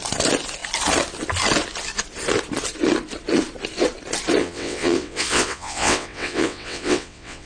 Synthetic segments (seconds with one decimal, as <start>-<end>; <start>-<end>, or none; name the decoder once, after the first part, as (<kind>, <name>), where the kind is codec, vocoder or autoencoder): 4.4-7.5 (vocoder, WaveNeXt)